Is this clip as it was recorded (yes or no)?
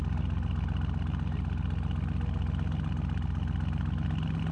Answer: yes